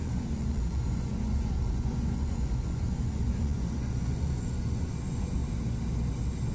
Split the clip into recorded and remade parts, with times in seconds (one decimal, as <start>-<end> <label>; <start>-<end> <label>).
0.0-5.4 remade; 5.4-6.5 recorded